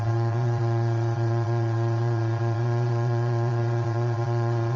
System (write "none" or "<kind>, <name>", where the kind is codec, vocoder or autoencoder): vocoder, WaveNeXt